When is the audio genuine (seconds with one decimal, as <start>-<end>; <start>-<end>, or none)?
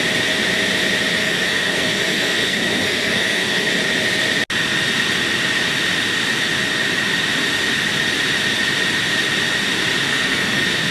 0.0-1.2; 3.8-10.1